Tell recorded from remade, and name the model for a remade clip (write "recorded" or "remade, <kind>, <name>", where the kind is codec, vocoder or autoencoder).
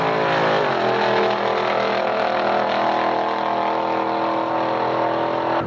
recorded